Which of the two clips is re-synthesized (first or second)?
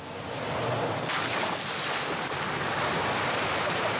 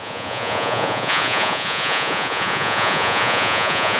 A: second